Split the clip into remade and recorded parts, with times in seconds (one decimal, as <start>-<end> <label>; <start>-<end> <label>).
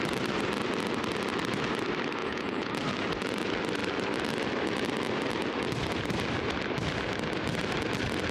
0.0-2.2 recorded; 2.2-2.7 remade; 2.7-8.3 recorded